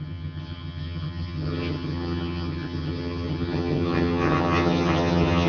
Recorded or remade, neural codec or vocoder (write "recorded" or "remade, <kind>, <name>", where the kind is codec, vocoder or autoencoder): remade, vocoder, HiFi-GAN